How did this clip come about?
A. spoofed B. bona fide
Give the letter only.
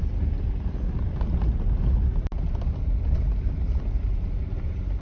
B